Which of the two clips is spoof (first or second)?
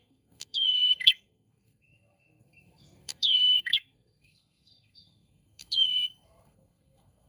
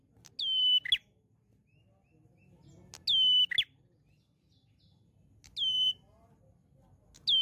first